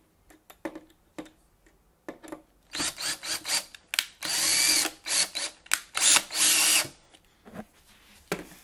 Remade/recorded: recorded